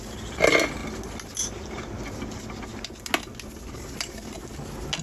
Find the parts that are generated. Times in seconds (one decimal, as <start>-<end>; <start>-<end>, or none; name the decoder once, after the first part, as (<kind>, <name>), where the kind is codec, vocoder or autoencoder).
none